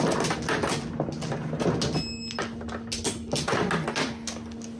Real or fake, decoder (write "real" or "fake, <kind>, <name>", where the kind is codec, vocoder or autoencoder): real